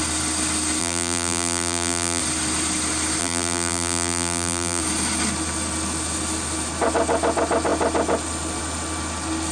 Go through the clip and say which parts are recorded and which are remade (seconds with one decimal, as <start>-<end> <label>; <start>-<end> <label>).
0.0-0.8 recorded; 0.8-2.2 remade; 2.2-3.2 recorded; 3.2-4.8 remade; 4.8-9.5 recorded